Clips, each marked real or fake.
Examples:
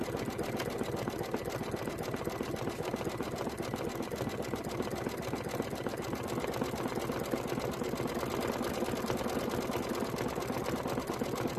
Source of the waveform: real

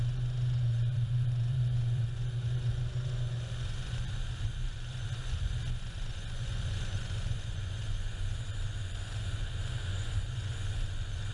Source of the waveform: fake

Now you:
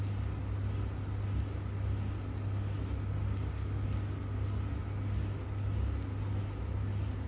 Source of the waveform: real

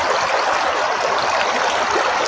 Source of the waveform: real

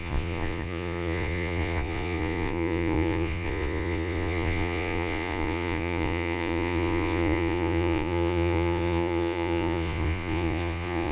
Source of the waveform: fake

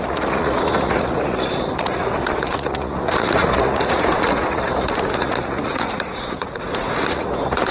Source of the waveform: fake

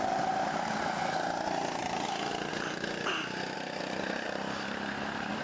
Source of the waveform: real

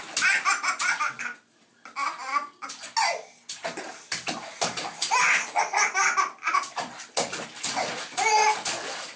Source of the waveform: real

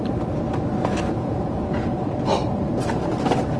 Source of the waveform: real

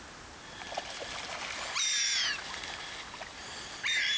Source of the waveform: real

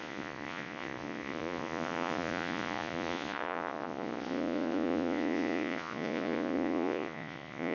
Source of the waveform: fake